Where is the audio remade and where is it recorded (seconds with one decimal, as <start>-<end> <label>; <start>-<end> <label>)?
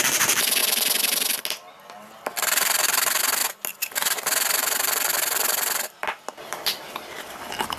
0.0-0.6 remade; 0.6-1.9 recorded; 1.9-3.4 remade; 3.4-3.9 recorded; 3.9-7.8 remade